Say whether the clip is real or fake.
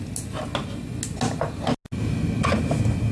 real